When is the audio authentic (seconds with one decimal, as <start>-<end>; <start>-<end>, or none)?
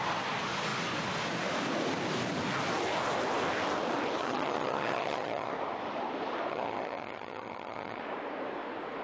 0.0-4.2; 5.5-6.5; 8.0-9.0